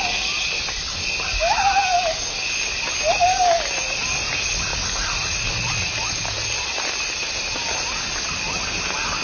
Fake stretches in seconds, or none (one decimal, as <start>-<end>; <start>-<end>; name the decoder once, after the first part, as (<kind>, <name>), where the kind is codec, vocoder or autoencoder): none